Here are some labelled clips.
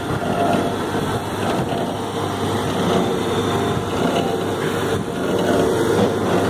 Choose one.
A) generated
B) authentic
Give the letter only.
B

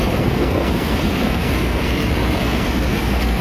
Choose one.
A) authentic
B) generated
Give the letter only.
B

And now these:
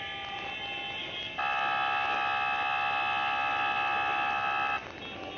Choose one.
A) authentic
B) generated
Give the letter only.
A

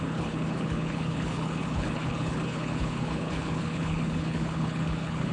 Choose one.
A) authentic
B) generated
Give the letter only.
B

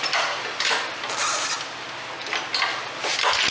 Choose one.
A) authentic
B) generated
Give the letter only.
A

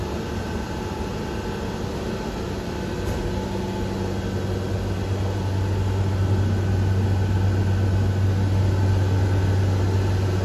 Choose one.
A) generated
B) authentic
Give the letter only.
B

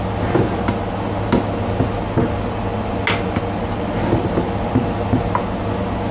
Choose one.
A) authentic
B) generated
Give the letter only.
A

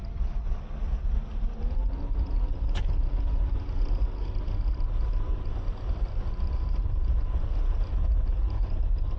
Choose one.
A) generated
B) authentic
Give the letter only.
B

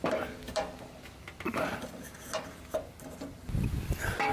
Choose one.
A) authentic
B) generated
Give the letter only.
A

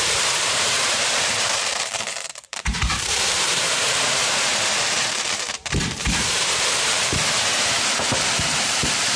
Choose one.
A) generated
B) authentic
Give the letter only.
A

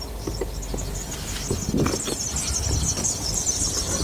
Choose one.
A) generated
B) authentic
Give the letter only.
B